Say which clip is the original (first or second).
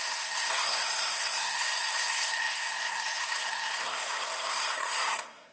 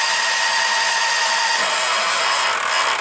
second